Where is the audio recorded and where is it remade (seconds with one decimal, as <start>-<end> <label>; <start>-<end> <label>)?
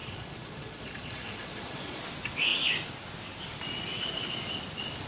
0.0-2.0 remade; 2.0-5.1 recorded